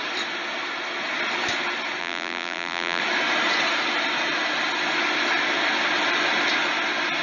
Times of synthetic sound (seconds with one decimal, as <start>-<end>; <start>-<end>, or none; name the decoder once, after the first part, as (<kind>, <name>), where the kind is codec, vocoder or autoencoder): 2.0-3.0 (vocoder, BigVGAN v2)